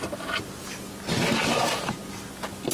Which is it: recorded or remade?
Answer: recorded